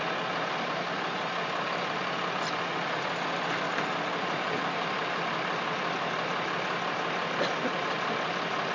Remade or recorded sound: recorded